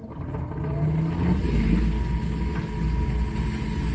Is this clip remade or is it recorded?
recorded